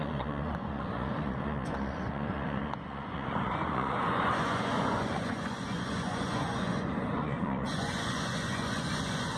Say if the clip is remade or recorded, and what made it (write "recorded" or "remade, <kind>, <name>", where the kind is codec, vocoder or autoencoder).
remade, vocoder, Vocos